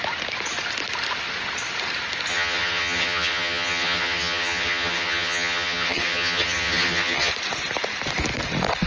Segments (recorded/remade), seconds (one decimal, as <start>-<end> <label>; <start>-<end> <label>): 0.0-2.3 recorded; 2.3-7.3 remade; 7.3-8.9 recorded